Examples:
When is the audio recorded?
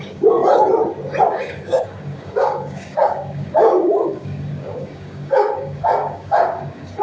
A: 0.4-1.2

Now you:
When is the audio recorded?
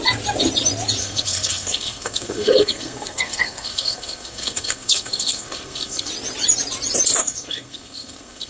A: 0.0-1.0; 6.1-7.2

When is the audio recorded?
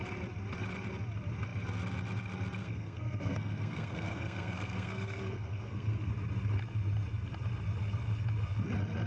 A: 0.0-2.6; 6.1-9.1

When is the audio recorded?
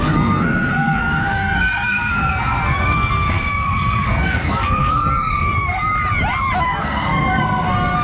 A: 5.9-6.6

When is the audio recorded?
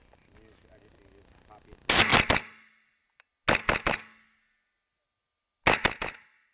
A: 0.0-2.1; 3.2-6.5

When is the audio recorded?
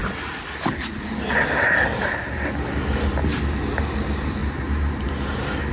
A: 0.0-5.7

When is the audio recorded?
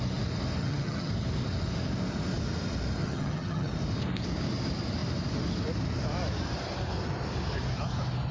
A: 0.0-0.6; 1.1-3.0; 3.7-8.3